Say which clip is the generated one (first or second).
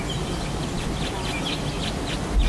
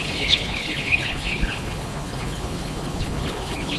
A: second